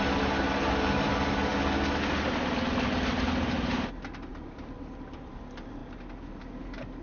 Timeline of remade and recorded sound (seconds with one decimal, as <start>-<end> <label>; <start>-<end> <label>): 0.0-7.0 recorded